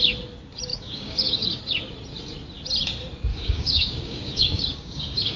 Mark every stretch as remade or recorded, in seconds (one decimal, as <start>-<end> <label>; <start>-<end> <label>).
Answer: 0.0-0.7 recorded; 0.7-1.6 remade; 1.6-3.3 recorded; 3.3-5.4 remade